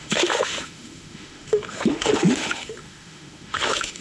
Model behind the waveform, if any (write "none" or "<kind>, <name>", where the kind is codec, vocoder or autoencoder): autoencoder, DAC-VAE